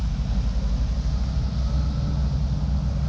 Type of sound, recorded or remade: recorded